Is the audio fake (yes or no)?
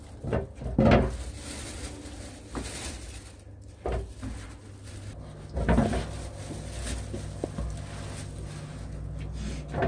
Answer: no